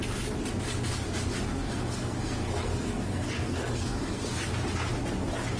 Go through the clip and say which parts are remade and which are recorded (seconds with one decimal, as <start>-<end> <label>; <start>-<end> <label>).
0.0-1.5 recorded; 1.5-4.5 remade; 4.5-5.6 recorded